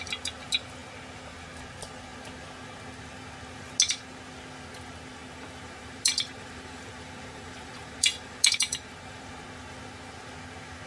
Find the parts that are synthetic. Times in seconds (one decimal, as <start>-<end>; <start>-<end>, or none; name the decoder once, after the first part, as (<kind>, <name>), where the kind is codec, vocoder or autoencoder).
5.2-9.3 (vocoder, BigVGAN v2)